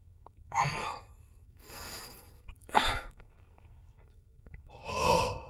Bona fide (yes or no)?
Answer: no